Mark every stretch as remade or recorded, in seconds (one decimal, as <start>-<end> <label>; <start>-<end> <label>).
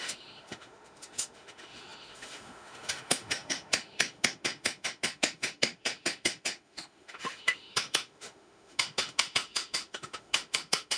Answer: 0.0-11.0 remade